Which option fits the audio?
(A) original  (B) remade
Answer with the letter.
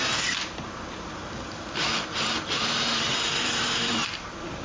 A